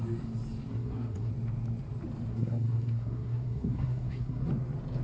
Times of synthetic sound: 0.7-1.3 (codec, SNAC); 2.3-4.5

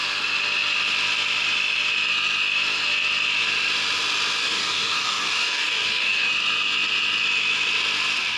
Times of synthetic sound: 4.4-6.3 (codec, DAC)

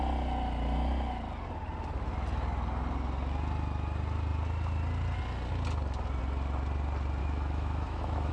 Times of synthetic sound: 7.2-8.3 (autoencoder, DAC-VAE)

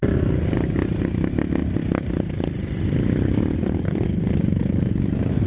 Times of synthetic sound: 1.6-4.6 (vocoder, BigVGAN v2)

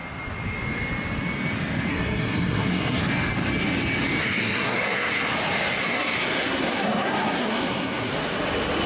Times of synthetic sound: 1.9-3.0 (codec, SNAC); 4.2-5.3; 5.8-8.1

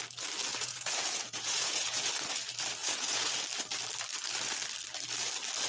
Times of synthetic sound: 0.5-2.1 (vocoder, Vocos); 2.8-3.3

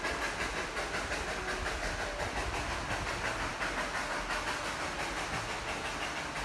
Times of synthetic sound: none